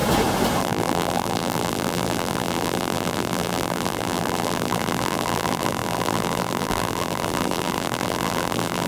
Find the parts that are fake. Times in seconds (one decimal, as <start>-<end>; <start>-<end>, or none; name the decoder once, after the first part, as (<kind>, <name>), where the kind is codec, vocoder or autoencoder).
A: 0.6-8.9 (vocoder, BigVGAN v2)